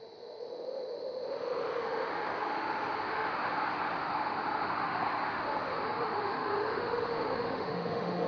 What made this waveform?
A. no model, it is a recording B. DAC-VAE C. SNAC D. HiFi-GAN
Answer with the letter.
B